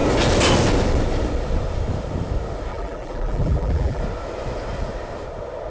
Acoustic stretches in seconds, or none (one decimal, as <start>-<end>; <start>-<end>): 0.0-2.7; 4.0-5.7